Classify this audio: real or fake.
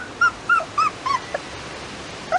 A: real